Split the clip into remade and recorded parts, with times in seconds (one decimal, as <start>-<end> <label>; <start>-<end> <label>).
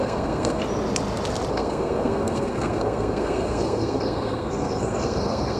0.0-0.6 remade; 0.6-1.5 recorded; 1.5-5.6 remade